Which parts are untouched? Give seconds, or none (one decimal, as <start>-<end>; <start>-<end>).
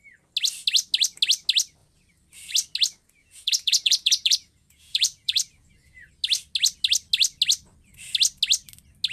0.0-3.2; 6.1-9.1